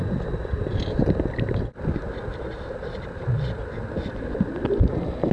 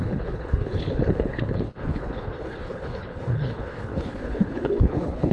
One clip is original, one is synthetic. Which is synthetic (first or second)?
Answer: second